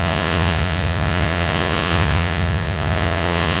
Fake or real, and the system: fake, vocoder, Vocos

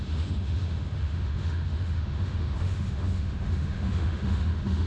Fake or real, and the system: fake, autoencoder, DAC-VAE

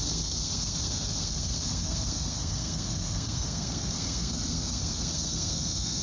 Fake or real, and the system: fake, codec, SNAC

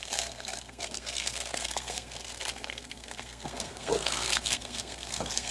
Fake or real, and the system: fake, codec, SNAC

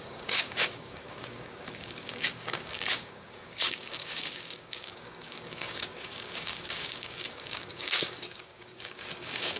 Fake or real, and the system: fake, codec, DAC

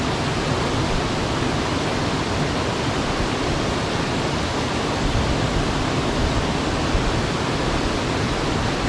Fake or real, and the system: real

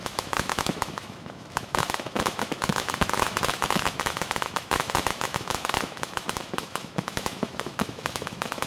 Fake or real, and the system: fake, autoencoder, DAC-VAE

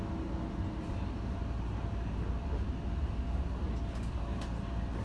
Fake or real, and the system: real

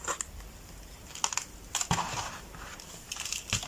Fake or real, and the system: real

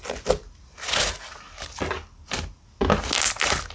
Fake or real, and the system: real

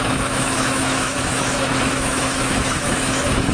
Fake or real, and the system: fake, autoencoder, DAC-VAE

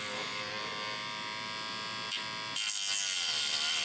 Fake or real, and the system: real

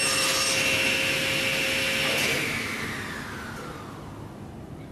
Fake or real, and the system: real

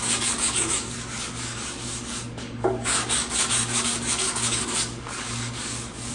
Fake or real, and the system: fake, codec, DAC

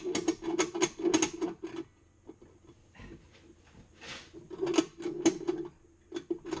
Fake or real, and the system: real